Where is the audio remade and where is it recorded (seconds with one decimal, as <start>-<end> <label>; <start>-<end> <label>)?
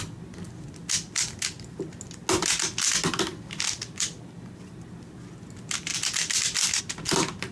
0.0-7.5 recorded